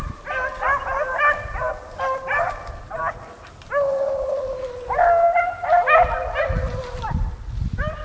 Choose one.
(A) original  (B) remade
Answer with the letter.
A